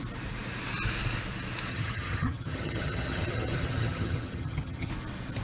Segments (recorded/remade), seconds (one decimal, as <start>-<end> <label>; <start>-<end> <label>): 0.0-1.7 recorded; 1.7-4.9 remade; 4.9-5.4 recorded

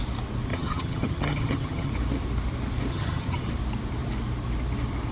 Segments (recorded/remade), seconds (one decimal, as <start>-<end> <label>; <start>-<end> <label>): 0.0-0.5 recorded; 0.5-1.9 remade; 1.9-2.9 recorded; 2.9-3.5 remade; 3.5-5.1 recorded

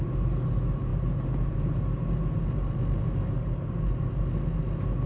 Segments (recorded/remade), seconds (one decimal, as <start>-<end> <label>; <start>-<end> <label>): 0.0-5.1 recorded

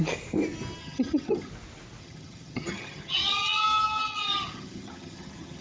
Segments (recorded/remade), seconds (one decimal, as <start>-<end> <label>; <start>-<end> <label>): 0.0-0.8 recorded; 0.8-1.5 remade; 1.5-2.0 recorded; 2.0-5.6 remade

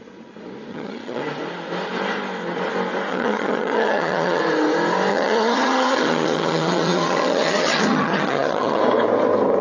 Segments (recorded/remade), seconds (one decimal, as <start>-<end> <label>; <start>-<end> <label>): 0.0-0.7 recorded; 0.7-1.2 remade; 1.2-3.1 recorded; 3.1-4.4 remade; 4.4-5.1 recorded; 5.1-8.8 remade; 8.8-9.6 recorded

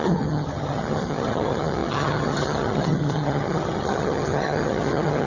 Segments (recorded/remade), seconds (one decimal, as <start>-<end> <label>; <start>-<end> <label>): 0.0-5.3 remade